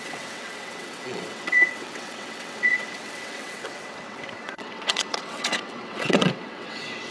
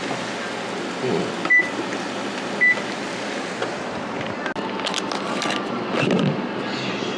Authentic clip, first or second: second